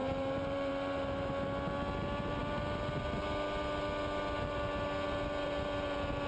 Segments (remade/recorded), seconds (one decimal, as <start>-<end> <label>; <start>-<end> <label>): 0.0-1.3 remade; 1.3-6.3 recorded